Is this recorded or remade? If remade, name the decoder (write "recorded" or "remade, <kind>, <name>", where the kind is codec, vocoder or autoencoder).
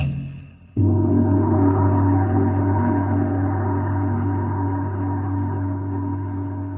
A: remade, codec, HILCodec